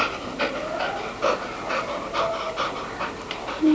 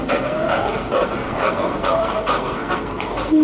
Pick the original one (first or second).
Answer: first